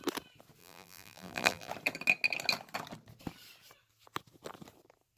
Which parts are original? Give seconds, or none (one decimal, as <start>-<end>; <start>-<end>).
0.0-0.6; 1.7-5.2